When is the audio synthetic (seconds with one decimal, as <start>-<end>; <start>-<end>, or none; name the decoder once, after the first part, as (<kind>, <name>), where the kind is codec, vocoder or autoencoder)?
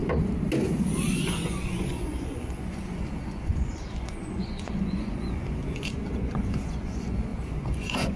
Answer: 1.1-8.2 (vocoder, Vocos)